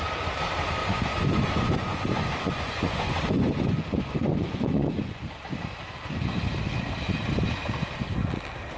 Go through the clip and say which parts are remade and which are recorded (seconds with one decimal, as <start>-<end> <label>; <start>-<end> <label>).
0.0-0.8 recorded; 0.8-5.2 remade; 5.2-8.8 recorded